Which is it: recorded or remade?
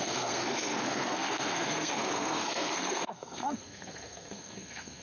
remade